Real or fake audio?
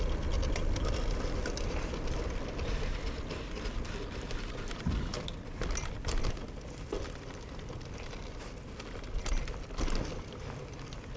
real